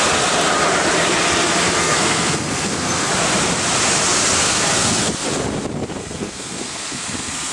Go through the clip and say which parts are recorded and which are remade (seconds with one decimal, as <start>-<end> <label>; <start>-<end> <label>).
0.0-1.8 recorded; 1.8-3.1 remade; 3.1-4.4 recorded; 4.4-5.1 remade; 5.1-6.0 recorded; 6.0-7.5 remade